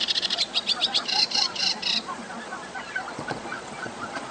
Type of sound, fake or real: fake